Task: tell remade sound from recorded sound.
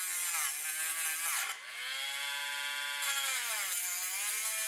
recorded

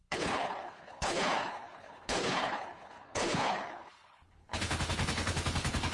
remade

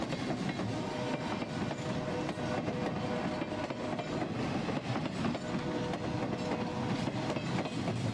recorded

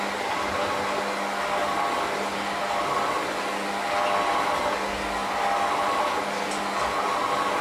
recorded